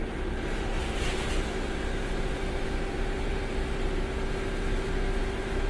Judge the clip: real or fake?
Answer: real